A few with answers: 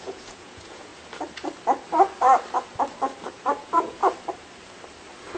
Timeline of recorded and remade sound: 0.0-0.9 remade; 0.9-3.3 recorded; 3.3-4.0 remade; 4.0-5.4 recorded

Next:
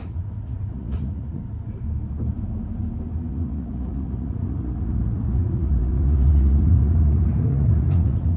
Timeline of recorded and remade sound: 0.0-1.4 remade; 1.4-3.3 recorded; 3.3-8.4 remade

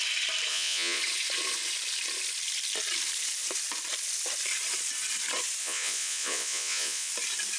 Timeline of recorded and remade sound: 0.0-0.5 recorded; 0.5-1.0 remade; 1.0-5.6 recorded; 5.6-7.1 remade; 7.1-7.6 recorded

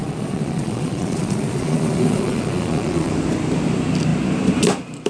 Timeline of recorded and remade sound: 0.0-3.1 remade; 3.1-5.1 recorded

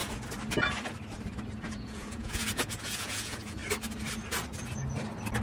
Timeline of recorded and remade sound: 0.0-1.6 recorded; 1.6-3.6 remade; 3.6-5.4 recorded

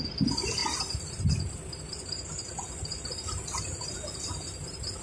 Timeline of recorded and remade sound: 0.0-5.0 recorded

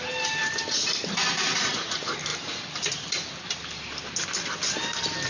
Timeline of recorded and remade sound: 0.0-5.3 recorded

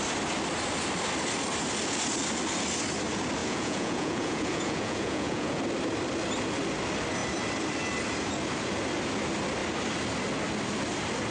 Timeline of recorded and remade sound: 0.0-3.4 recorded; 3.4-5.6 remade; 5.6-11.3 recorded